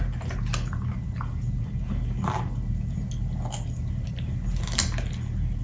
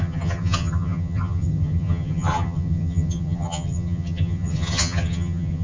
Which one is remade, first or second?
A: second